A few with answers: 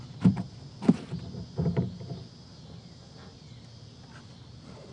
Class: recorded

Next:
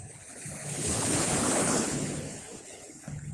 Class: remade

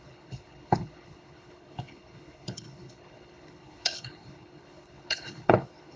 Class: remade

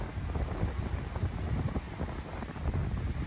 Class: recorded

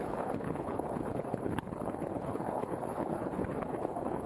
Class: remade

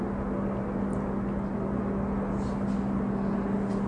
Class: recorded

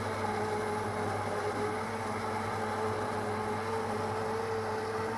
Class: recorded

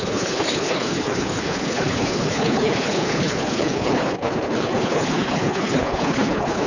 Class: remade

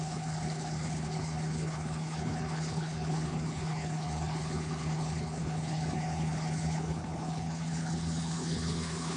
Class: remade